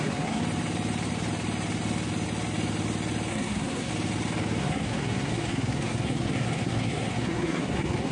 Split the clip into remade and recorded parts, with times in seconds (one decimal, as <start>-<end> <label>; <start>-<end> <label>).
0.0-0.4 remade; 0.4-3.3 recorded; 3.3-3.9 remade; 3.9-4.6 recorded; 4.6-8.1 remade